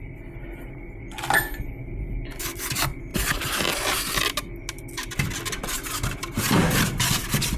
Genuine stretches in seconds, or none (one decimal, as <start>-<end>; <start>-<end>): 0.0-3.1; 4.2-7.6